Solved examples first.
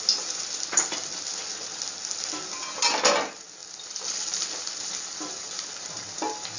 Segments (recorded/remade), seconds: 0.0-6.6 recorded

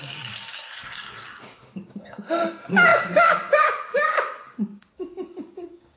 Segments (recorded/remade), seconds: 0.0-6.0 remade

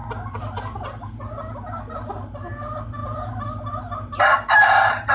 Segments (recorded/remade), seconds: 0.0-5.1 recorded

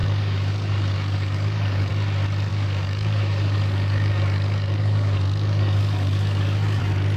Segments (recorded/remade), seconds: 0.0-1.9 remade; 1.9-2.5 recorded; 2.5-6.8 remade; 6.8-7.2 recorded